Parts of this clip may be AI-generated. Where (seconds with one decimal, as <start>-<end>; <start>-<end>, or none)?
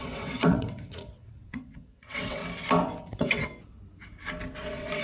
0.0-2.4; 3.1-3.5; 4.6-5.0